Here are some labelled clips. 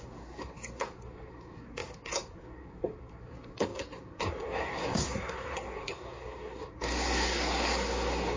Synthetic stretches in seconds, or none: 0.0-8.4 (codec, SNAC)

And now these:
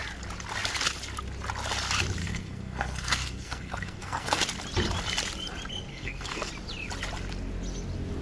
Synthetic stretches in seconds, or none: 2.2-4.4 (codec, SNAC); 5.9-6.5

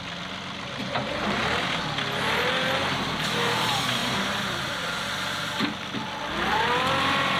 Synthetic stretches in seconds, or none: 0.8-1.4 (vocoder, BigVGAN v2); 4.0-4.8

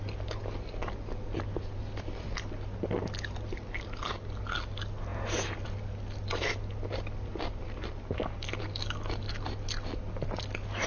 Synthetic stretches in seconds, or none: none

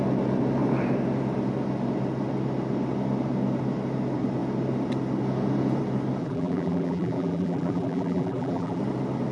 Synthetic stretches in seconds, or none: 6.2-8.8 (vocoder, BigVGAN v2)

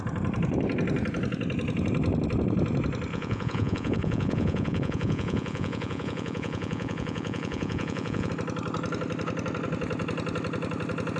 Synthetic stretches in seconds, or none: 3.1-8.3 (vocoder, Vocos)